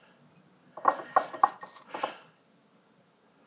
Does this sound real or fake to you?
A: real